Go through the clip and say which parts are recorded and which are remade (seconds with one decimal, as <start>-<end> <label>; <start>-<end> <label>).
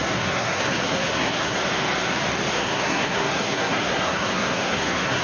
0.0-1.6 remade; 1.6-2.5 recorded; 2.5-5.2 remade